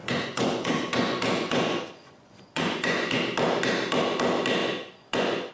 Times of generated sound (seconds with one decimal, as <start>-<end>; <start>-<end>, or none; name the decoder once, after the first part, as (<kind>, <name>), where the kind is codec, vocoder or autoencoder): 0.0-3.2 (vocoder, Vocos); 4.6-5.5

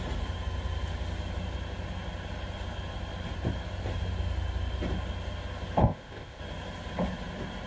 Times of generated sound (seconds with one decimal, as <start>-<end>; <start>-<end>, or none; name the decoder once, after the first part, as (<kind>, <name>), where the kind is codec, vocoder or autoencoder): 5.8-6.4 (codec, ZipCodec)

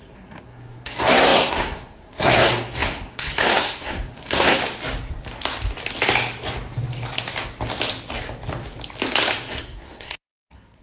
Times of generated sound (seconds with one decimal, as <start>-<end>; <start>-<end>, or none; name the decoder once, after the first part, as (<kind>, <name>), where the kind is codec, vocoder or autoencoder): 0.0-4.6 (codec, SNAC); 9.6-10.8

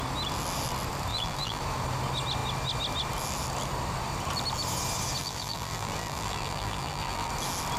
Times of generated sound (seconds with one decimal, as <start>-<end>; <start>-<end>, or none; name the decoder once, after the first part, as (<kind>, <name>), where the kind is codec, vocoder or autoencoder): 1.1-1.6 (vocoder, BigVGAN v2); 5.2-7.3

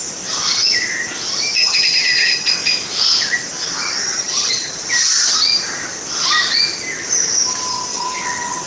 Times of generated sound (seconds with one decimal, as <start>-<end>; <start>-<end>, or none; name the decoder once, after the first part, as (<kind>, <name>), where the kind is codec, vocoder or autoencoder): 1.6-2.5 (vocoder, HiFi-GAN); 4.0-4.7; 7.9-8.7

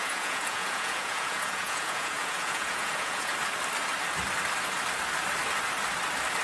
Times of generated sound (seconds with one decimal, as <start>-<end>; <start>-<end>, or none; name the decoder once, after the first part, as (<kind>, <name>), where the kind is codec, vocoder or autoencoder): 0.0-3.3 (vocoder, Vocos)

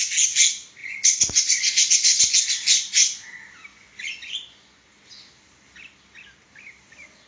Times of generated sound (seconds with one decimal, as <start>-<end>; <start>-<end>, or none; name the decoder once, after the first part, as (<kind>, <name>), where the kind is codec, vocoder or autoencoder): 0.8-2.2 (vocoder, Vocos); 3.7-5.0